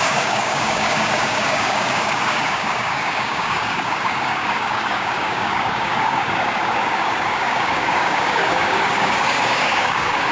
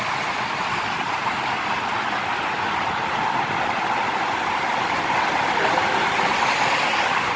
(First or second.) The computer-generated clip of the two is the first